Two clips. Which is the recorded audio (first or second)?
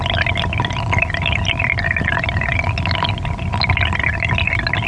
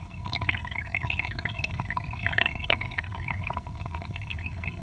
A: first